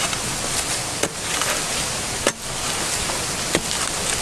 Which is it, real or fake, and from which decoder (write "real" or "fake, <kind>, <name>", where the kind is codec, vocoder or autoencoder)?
real